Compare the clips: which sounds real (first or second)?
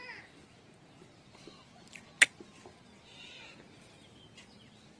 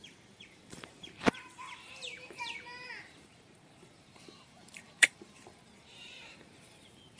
first